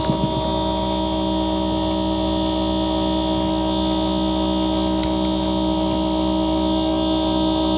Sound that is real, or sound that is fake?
real